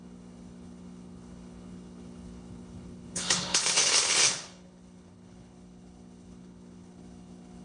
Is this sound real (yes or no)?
no